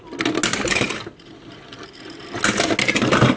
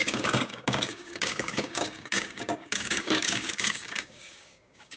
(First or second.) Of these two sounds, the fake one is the second